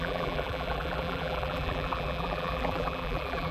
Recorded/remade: remade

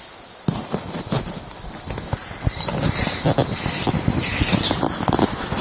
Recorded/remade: recorded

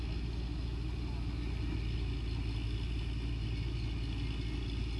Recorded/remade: recorded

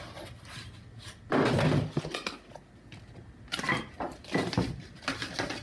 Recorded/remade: recorded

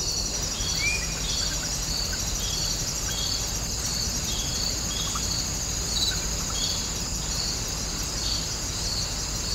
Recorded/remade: recorded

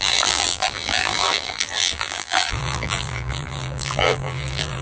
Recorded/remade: remade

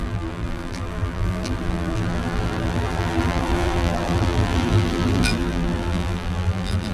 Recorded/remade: remade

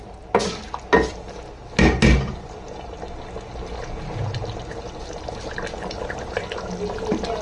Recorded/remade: recorded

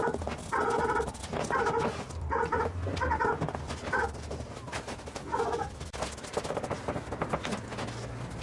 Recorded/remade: recorded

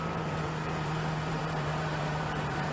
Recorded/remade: remade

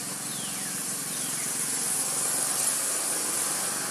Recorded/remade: recorded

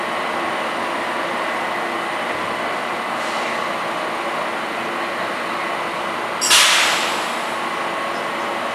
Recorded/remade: recorded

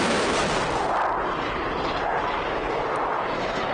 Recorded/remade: recorded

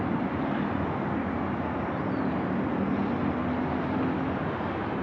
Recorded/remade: recorded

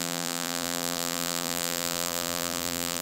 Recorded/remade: remade